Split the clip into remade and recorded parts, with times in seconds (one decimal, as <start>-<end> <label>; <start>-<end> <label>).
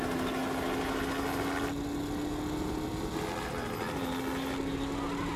0.0-5.4 recorded